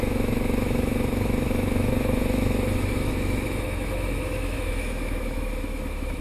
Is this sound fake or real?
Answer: fake